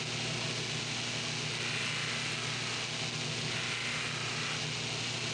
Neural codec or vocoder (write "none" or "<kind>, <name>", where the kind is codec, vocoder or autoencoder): none